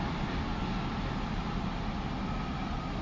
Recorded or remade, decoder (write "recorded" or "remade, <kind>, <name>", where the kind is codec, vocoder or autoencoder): recorded